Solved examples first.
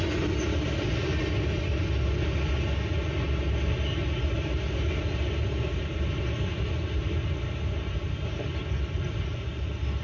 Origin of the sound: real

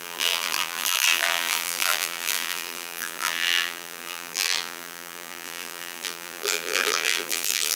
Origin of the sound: fake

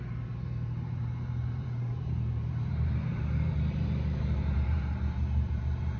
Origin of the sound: fake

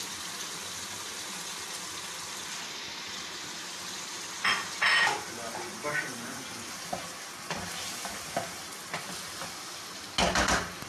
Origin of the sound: real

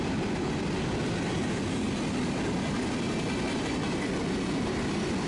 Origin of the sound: real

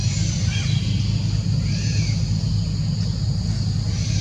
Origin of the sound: real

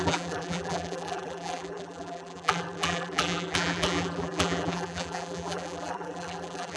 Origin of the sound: fake